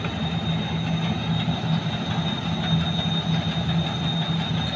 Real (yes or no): yes